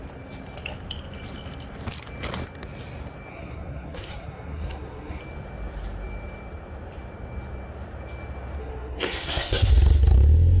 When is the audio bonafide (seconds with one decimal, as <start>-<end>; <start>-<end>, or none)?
0.0-3.3; 5.2-8.6; 9.7-10.6